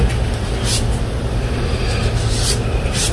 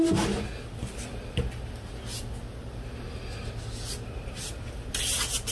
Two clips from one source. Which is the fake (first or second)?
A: first